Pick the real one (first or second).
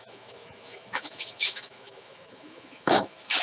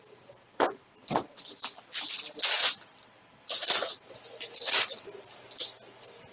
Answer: second